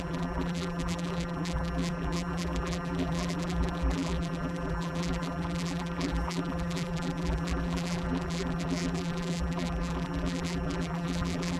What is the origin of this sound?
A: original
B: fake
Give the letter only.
B